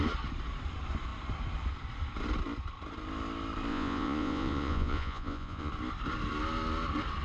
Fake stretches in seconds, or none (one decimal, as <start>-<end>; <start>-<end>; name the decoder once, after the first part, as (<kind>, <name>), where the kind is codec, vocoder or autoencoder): 3.7-5.7 (vocoder, Vocos)